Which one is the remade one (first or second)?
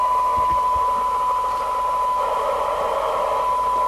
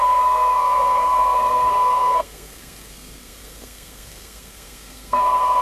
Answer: second